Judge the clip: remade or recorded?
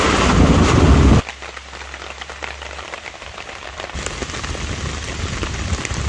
recorded